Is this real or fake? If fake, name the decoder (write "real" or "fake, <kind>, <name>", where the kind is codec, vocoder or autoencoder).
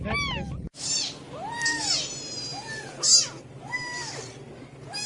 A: real